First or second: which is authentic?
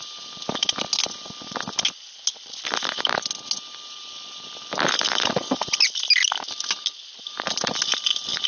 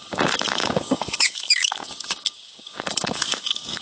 first